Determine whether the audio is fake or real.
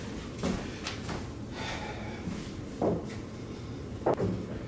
real